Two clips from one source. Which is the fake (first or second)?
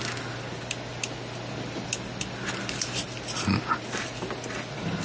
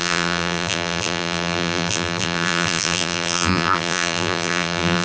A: second